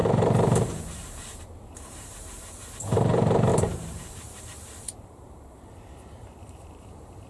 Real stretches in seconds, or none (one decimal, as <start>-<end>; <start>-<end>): none